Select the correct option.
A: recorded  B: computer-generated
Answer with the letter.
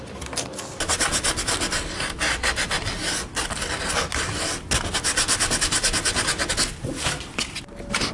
A